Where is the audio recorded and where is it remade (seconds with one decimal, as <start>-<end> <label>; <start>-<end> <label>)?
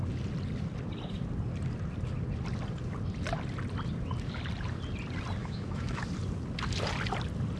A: 0.0-5.4 recorded; 5.4-6.0 remade; 6.0-7.6 recorded